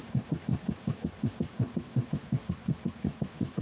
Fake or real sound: fake